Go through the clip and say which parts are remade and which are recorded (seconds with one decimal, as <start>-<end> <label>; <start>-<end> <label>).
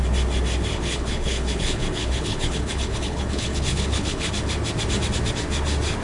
0.0-0.7 recorded; 0.7-4.3 remade; 4.3-6.0 recorded